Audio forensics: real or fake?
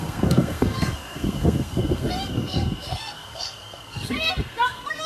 fake